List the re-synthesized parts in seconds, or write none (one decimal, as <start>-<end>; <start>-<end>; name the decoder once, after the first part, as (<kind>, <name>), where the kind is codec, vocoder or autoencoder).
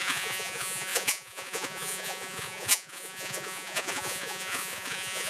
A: 0.0-5.3 (vocoder, Vocos)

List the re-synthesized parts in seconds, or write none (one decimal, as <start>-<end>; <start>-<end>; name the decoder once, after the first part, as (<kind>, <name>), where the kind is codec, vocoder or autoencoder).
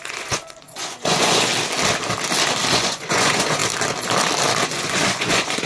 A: 0.0-1.5 (vocoder, Vocos); 2.7-3.6; 4.6-5.7